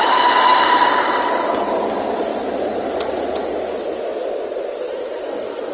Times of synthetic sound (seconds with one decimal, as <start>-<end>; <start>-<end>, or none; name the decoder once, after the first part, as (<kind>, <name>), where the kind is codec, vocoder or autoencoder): 0.0-2.3 (vocoder, BigVGAN v2); 2.8-3.5